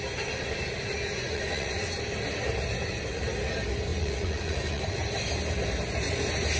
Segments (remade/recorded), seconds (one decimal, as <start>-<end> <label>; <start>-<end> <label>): 0.0-1.2 recorded; 1.2-1.9 remade; 1.9-3.9 recorded; 3.9-4.8 remade; 4.8-6.6 recorded